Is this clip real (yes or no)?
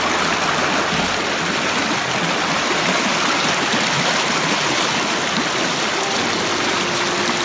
yes